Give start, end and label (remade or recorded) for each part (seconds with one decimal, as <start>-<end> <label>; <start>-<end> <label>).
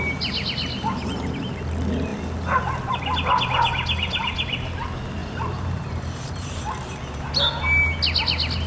0.0-5.2 recorded; 5.2-7.0 remade; 7.0-8.7 recorded